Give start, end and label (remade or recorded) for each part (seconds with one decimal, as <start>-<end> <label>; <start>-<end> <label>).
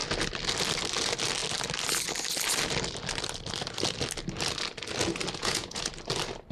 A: 0.0-5.4 recorded; 5.4-5.9 remade; 5.9-6.5 recorded